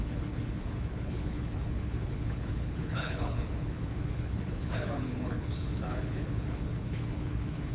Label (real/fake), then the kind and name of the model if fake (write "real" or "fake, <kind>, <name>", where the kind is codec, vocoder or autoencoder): fake, codec, HILCodec